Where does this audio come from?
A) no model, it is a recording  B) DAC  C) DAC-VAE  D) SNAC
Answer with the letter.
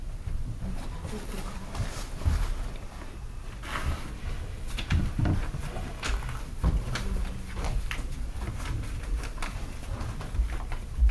A